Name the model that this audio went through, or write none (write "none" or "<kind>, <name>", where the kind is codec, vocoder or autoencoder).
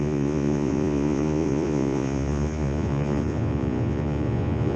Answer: vocoder, Vocos